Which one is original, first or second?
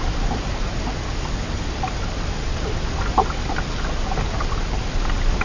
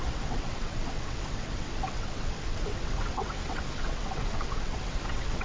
first